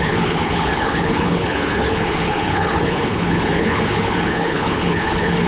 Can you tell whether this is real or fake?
fake